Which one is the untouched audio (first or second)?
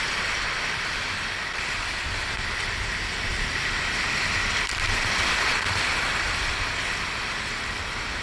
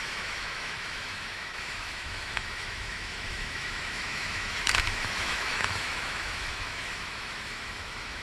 first